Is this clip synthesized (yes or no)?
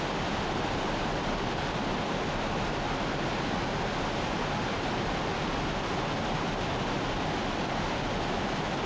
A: no